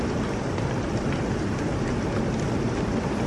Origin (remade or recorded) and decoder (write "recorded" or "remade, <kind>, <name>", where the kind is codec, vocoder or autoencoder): recorded